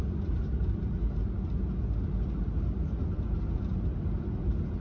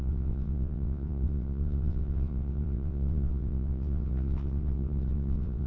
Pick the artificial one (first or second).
second